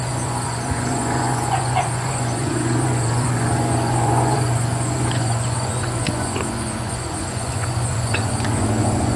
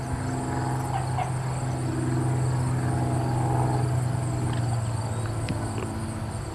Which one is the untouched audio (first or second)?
second